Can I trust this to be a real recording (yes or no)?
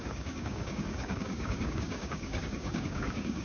no